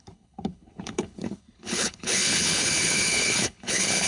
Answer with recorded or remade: remade